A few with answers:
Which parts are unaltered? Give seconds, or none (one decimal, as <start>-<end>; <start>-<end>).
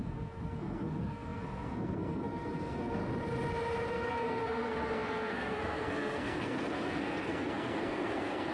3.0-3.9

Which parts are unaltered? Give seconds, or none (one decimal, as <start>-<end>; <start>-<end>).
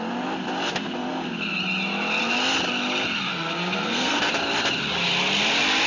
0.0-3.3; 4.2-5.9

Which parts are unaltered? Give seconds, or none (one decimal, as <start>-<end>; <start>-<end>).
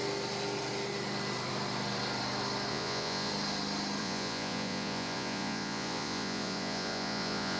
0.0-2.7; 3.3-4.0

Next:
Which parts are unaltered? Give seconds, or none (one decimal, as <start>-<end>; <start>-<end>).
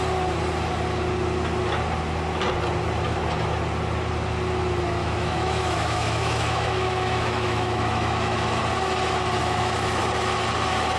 0.0-5.0; 8.6-9.4; 10.0-11.0